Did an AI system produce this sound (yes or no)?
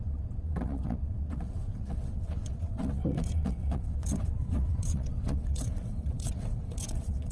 yes